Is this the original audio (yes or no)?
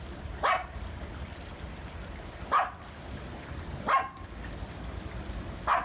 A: yes